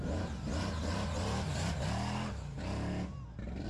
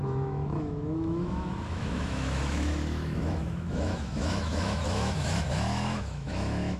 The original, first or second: first